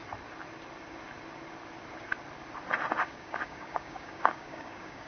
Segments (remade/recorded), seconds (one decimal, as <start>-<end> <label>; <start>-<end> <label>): 0.0-3.0 recorded; 3.0-5.1 remade

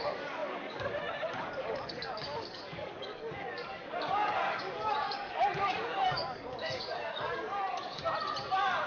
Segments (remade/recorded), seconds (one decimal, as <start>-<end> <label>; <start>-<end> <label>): 0.0-8.0 remade; 8.0-8.9 recorded

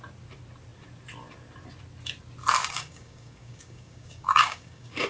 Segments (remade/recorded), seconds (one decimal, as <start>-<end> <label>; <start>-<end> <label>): 0.0-2.6 recorded; 2.6-5.1 remade

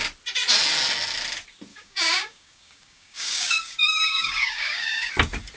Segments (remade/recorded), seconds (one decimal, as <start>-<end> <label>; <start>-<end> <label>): 0.0-1.7 recorded; 1.7-5.1 remade; 5.1-5.6 recorded